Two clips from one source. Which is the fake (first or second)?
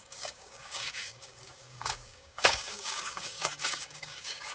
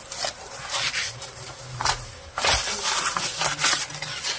first